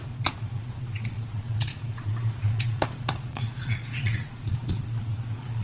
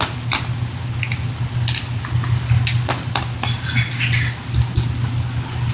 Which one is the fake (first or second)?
first